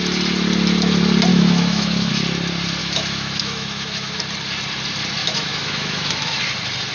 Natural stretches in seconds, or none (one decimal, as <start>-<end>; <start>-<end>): 0.0-1.3; 2.1-2.8; 4.2-5.2; 6.4-6.9